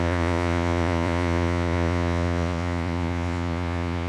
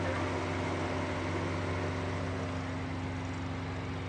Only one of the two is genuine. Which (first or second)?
second